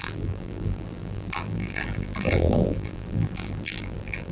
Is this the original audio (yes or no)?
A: no